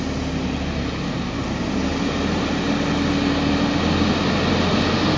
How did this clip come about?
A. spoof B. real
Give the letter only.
B